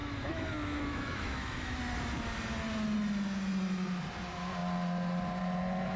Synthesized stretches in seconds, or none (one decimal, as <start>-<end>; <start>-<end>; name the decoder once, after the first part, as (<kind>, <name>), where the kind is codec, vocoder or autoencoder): 0.0-0.5 (autoencoder, DAC-VAE); 0.9-1.8